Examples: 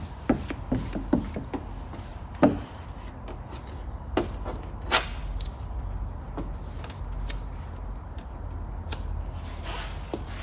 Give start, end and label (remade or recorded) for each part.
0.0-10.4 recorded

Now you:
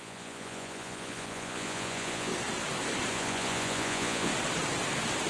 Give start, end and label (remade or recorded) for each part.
0.0-2.3 remade; 2.3-3.1 recorded; 3.1-4.3 remade; 4.3-5.3 recorded

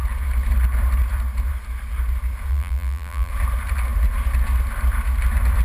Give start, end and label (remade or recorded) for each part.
0.0-2.5 recorded; 2.5-3.3 remade; 3.3-5.6 recorded

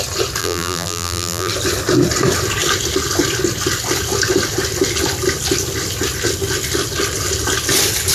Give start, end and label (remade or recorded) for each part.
0.0-0.4 recorded; 0.4-1.5 remade; 1.5-8.1 recorded

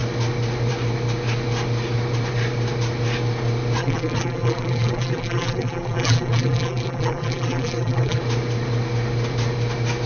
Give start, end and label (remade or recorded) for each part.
0.0-3.8 recorded; 3.8-8.2 remade; 8.2-10.1 recorded

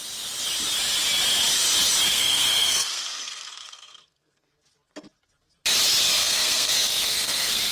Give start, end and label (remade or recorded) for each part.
0.0-2.1 recorded; 2.1-4.5 remade; 4.5-6.2 recorded; 6.2-7.7 remade

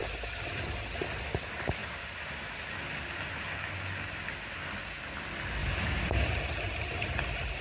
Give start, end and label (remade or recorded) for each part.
0.0-1.8 recorded; 1.8-2.7 remade; 2.7-5.6 recorded; 5.6-6.2 remade; 6.2-7.6 recorded

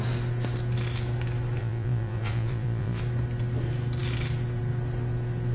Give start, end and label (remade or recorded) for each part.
0.0-1.6 recorded; 1.6-3.0 remade; 3.0-5.5 recorded